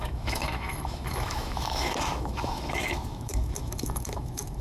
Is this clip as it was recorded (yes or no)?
no